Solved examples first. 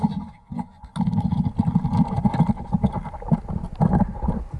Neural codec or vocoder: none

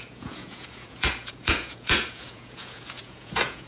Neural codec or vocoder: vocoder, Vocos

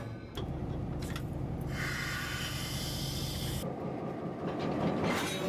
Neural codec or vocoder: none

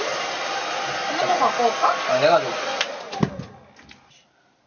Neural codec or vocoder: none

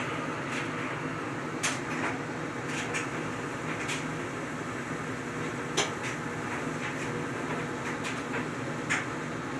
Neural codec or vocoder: none